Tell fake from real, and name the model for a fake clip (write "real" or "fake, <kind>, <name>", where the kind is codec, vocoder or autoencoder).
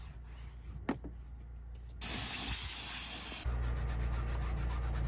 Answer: real